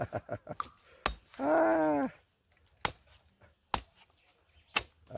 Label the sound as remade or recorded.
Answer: recorded